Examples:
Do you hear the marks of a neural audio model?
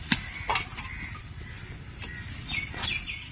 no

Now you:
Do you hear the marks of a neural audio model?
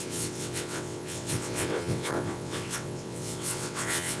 yes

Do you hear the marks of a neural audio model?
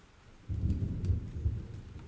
no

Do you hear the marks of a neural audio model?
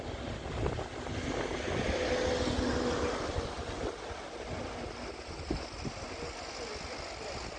no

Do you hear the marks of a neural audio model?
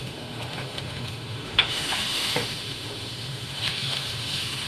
yes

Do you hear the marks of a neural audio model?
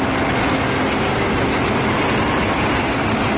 no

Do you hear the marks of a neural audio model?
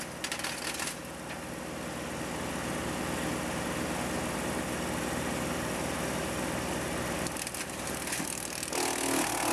no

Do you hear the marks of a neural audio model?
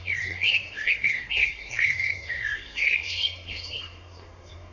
yes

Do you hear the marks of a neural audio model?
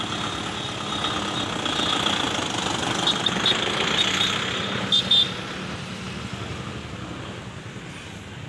no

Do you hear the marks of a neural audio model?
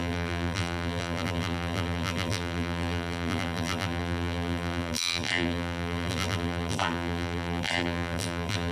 yes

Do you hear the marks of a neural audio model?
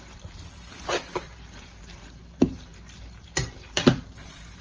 yes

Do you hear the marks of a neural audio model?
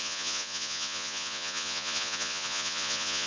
yes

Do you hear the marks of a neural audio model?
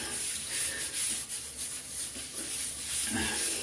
no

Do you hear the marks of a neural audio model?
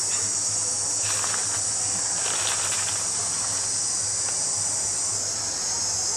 no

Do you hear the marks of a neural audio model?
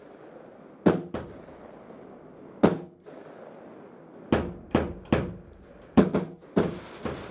no